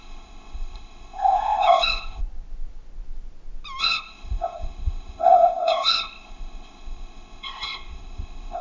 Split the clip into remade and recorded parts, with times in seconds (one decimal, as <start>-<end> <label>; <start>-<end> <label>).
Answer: 0.0-2.2 remade; 2.2-3.8 recorded; 3.8-8.6 remade